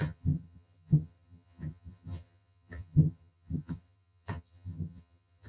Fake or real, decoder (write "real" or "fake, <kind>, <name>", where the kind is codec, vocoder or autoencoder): fake, vocoder, HiFi-GAN